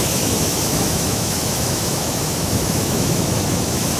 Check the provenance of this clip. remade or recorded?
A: remade